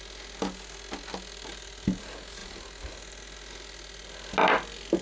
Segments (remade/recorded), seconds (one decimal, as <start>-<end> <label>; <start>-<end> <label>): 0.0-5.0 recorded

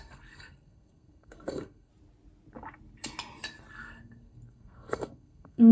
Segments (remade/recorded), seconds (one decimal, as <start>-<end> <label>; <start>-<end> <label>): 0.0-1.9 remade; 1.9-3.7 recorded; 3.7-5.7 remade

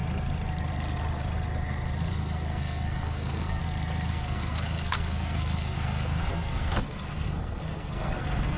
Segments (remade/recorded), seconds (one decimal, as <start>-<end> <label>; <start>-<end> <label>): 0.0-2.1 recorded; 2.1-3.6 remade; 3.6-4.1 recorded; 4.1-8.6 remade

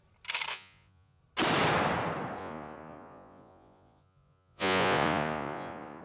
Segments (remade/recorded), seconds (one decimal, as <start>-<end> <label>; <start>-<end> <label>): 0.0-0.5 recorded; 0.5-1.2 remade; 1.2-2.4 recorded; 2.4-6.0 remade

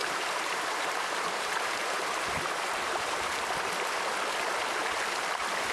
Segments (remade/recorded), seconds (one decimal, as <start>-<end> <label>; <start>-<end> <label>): 0.0-3.4 remade; 3.4-5.7 recorded

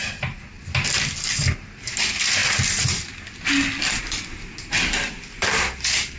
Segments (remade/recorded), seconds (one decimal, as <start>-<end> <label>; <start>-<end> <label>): 0.0-6.2 recorded